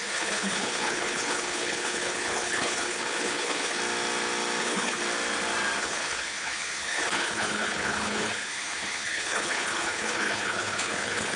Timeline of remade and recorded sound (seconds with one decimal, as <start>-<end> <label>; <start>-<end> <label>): 0.0-3.8 remade; 3.8-4.6 recorded; 4.6-5.0 remade; 5.0-5.8 recorded; 5.8-11.4 remade